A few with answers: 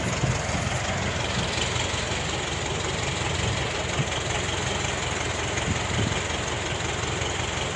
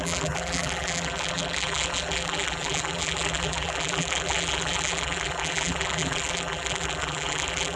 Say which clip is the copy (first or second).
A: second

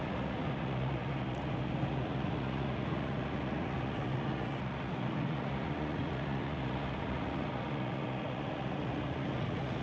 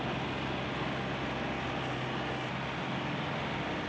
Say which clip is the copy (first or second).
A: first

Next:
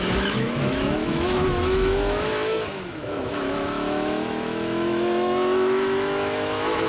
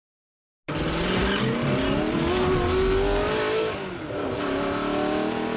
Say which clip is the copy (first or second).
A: first